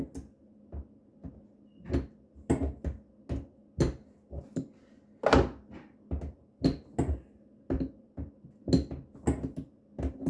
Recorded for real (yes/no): yes